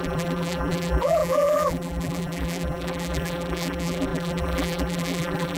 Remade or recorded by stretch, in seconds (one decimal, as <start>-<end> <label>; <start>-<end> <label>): 0.0-5.6 remade